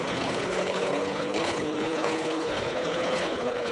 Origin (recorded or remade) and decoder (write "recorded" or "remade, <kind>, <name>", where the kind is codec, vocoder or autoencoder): remade, codec, HILCodec